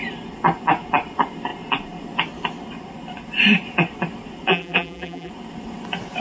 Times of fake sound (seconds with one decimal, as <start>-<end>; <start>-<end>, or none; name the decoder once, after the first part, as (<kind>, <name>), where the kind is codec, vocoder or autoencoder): 4.5-5.3 (vocoder, BigVGAN v2)